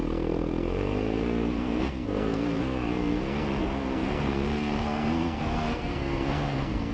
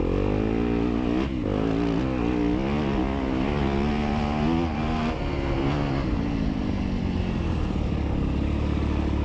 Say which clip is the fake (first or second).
first